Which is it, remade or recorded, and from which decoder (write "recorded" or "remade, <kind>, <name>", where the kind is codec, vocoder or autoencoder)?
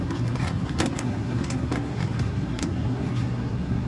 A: remade, codec, SNAC